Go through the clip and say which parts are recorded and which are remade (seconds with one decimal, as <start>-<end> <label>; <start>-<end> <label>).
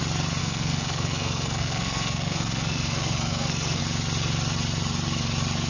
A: 0.0-0.4 recorded; 0.4-3.8 remade; 3.8-5.7 recorded